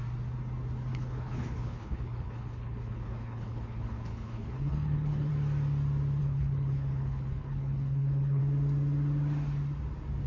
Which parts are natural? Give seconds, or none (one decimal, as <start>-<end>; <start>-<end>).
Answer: 0.0-0.9; 5.3-6.2; 8.4-10.3